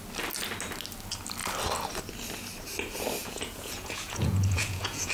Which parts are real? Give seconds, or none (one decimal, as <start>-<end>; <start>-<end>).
0.0-3.2